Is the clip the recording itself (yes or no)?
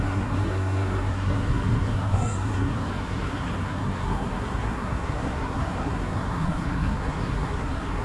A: no